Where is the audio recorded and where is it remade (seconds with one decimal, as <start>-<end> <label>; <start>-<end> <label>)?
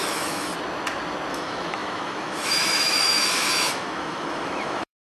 0.0-0.5 remade; 0.5-1.3 recorded; 1.3-5.2 remade